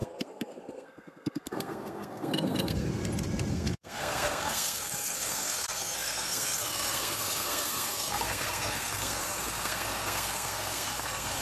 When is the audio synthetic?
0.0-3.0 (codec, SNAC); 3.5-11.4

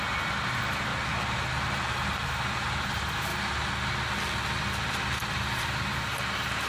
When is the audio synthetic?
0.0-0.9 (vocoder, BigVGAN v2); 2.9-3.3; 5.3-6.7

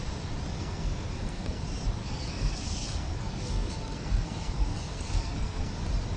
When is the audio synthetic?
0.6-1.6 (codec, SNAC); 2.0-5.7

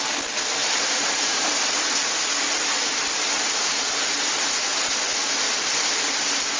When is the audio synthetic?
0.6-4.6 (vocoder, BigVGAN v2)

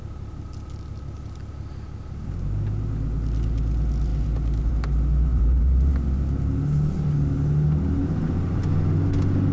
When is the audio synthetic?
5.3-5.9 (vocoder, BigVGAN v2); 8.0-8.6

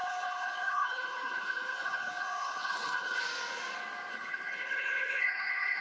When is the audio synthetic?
0.0-3.2 (codec, HILCodec); 4.1-5.8